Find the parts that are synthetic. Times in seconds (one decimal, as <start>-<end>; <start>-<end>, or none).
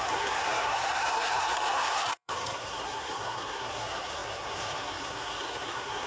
0.0-6.1